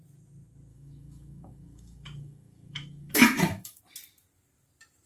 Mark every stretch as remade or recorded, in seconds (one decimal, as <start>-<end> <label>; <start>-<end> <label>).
0.0-0.7 recorded; 0.7-3.8 remade; 3.8-5.1 recorded